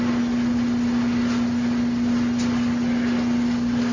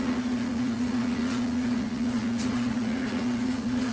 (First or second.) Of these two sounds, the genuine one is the first